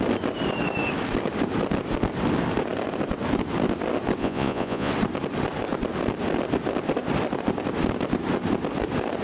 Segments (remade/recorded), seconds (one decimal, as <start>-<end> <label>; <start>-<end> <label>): 0.0-4.2 recorded; 4.2-4.9 remade; 4.9-9.2 recorded